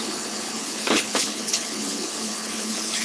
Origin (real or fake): fake